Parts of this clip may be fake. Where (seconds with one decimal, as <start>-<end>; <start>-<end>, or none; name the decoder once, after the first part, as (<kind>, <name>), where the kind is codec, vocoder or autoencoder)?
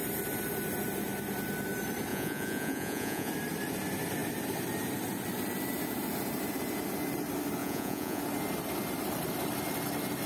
2.1-3.3 (vocoder, Vocos); 7.6-8.2